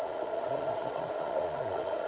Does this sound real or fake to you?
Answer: fake